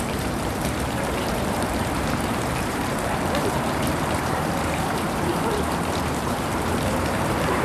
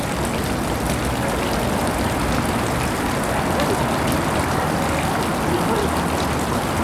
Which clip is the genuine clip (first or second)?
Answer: second